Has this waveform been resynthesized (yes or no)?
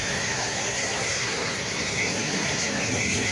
yes